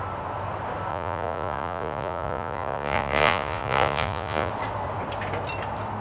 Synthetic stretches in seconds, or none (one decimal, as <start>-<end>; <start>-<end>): 0.9-4.5